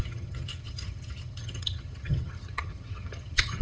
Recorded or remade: remade